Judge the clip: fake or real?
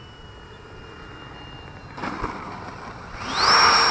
real